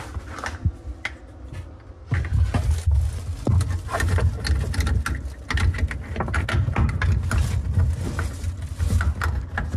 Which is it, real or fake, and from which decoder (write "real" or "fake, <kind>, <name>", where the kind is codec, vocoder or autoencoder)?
real